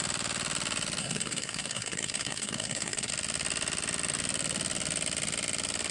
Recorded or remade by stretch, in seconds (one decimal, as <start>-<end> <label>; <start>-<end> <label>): 0.0-1.0 recorded; 1.0-3.1 remade; 3.1-5.9 recorded